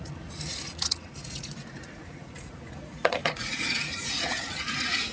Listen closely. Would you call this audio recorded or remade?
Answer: remade